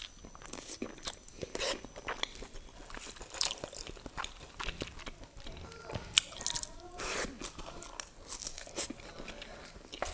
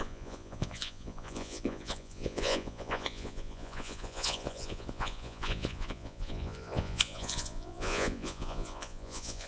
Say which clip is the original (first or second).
first